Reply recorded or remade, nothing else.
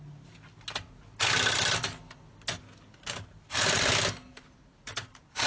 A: recorded